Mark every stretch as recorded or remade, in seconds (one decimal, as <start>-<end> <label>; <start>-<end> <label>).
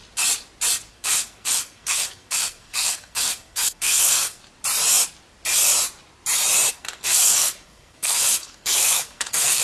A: 0.0-0.9 recorded; 0.9-4.4 remade; 4.4-6.7 recorded; 6.7-9.6 remade